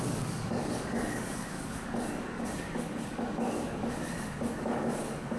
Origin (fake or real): fake